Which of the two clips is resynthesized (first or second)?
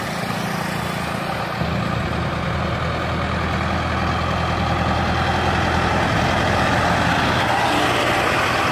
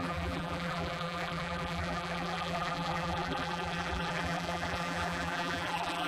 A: second